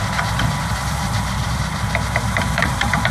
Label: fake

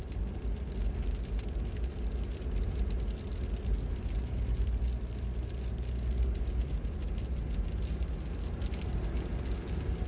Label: real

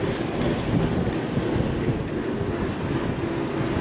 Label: real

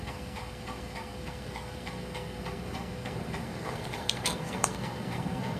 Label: fake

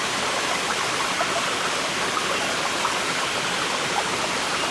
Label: real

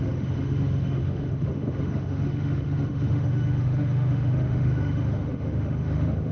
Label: fake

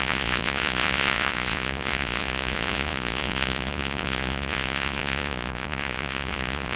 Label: fake